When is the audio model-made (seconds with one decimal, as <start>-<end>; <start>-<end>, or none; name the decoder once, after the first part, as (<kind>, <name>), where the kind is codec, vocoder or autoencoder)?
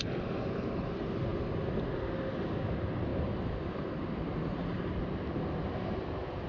3.1-4.9 (vocoder, BigVGAN v2)